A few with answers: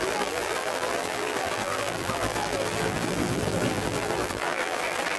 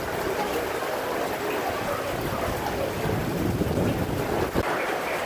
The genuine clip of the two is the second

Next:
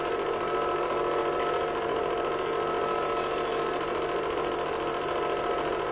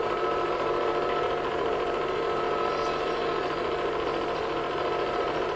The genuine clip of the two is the first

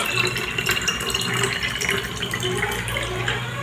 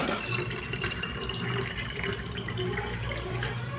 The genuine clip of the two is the first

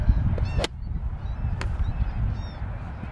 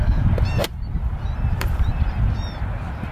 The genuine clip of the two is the first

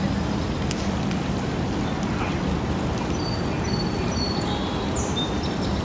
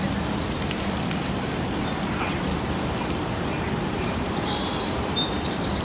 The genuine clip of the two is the first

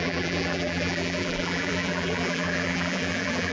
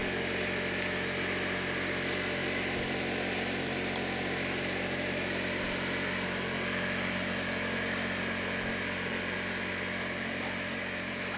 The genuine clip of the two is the second